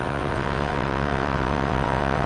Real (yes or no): no